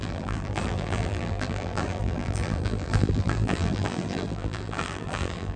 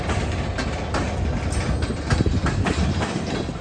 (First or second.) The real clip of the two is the second